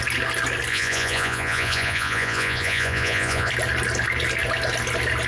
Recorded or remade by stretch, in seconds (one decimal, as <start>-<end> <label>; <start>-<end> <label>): 0.0-0.7 recorded; 0.7-3.5 remade; 3.5-5.3 recorded